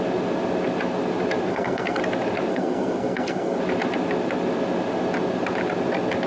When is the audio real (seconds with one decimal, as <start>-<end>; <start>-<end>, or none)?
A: 0.0-1.5; 2.0-2.5; 3.6-6.3